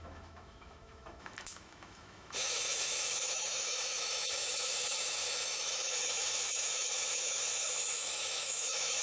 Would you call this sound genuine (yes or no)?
no